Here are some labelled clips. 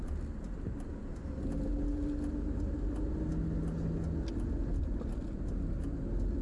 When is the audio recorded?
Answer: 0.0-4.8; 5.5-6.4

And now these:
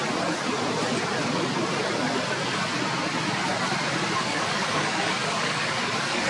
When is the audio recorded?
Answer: 0.0-4.2

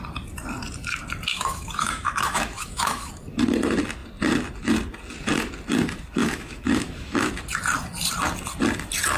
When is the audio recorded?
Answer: 0.0-1.3; 3.1-6.2; 7.3-9.2

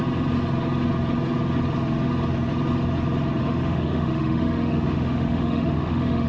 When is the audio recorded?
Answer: 0.0-3.4

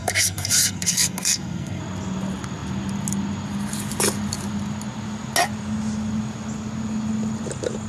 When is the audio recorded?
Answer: 1.8-7.9

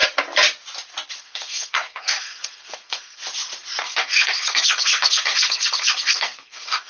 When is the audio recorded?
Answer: 0.0-1.2; 3.2-3.8